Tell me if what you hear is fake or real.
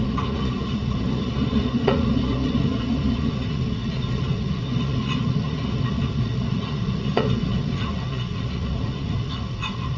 fake